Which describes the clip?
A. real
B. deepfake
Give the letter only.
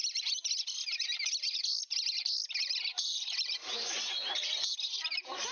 A